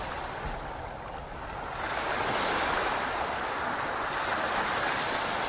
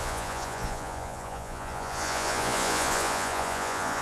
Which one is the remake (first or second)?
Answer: second